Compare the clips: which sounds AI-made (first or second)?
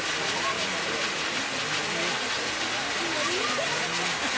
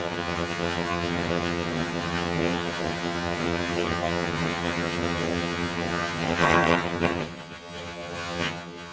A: second